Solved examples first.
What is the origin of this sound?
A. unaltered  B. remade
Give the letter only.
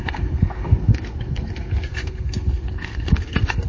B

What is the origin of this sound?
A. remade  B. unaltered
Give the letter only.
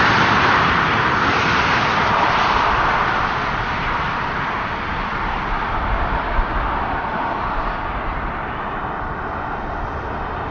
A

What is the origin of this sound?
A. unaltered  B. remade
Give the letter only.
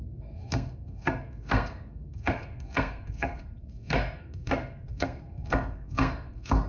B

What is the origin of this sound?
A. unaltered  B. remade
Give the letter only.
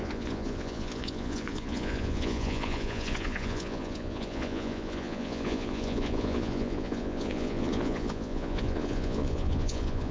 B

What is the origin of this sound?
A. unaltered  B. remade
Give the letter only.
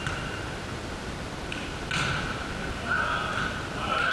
A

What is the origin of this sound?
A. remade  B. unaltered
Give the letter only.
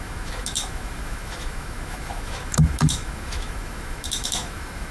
A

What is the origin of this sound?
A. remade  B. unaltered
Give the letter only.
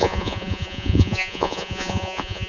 A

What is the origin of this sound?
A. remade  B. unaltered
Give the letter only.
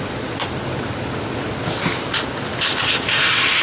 B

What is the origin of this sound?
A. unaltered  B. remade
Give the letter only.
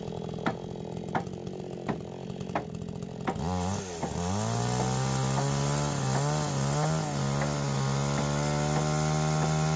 A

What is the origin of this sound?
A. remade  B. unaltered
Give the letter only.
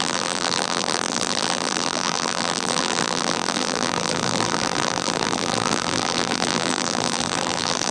A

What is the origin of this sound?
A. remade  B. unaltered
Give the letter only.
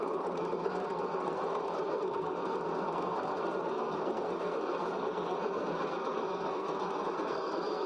A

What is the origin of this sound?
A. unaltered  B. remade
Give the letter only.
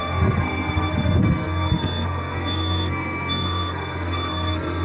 B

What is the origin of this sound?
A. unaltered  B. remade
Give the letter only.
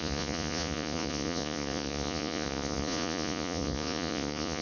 B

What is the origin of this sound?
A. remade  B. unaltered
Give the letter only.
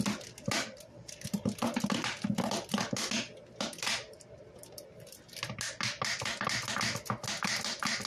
B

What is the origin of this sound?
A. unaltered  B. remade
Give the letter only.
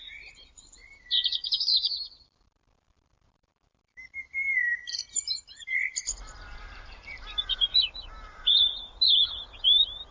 B